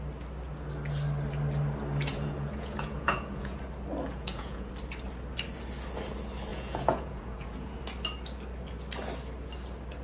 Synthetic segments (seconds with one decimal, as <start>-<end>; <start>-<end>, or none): 2.1-3.6; 4.1-4.7; 6.5-7.8